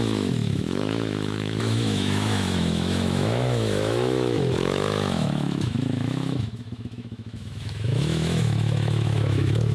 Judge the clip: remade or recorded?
remade